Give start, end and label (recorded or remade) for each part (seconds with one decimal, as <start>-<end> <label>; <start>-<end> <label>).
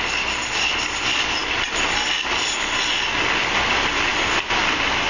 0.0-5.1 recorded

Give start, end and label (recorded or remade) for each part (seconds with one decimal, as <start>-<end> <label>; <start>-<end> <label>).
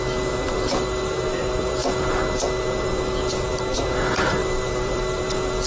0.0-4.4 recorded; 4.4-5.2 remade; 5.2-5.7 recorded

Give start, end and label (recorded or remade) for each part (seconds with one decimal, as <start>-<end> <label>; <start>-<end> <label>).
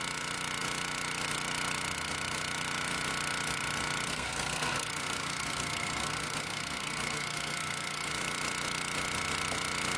0.0-4.1 recorded; 4.1-8.1 remade; 8.1-10.0 recorded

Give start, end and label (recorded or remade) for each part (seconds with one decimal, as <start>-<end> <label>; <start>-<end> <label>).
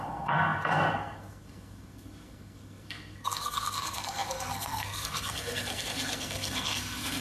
0.0-7.2 remade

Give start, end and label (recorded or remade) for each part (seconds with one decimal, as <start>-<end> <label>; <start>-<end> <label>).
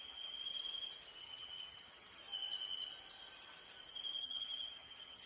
0.0-0.4 remade; 0.4-1.2 recorded; 1.2-2.2 remade; 2.2-4.2 recorded; 4.2-5.3 remade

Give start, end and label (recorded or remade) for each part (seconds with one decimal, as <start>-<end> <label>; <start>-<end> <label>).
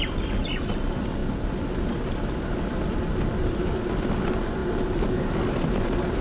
0.0-6.2 recorded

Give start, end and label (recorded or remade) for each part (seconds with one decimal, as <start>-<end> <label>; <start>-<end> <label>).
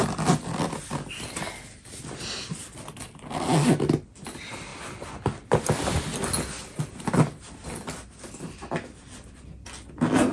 0.0-10.3 recorded